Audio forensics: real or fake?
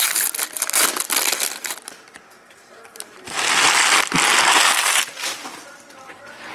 real